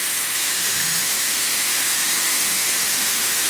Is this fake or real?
fake